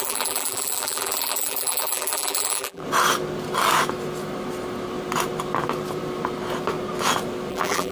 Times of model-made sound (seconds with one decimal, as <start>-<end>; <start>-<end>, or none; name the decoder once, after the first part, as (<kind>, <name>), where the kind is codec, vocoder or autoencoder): 0.0-2.8 (vocoder, BigVGAN v2); 7.5-7.9